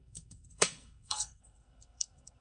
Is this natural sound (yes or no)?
no